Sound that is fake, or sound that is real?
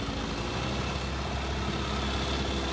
real